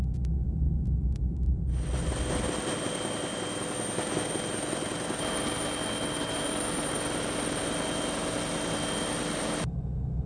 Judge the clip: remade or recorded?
recorded